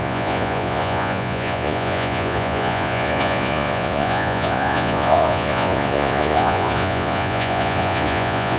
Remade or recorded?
remade